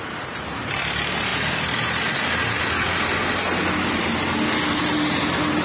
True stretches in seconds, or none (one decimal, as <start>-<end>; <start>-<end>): 0.0-5.6